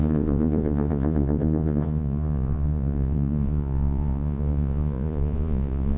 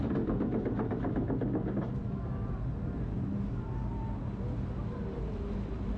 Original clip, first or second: second